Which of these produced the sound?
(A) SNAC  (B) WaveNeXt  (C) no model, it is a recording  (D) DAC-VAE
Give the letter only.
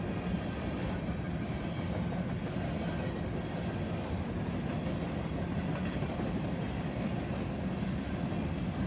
C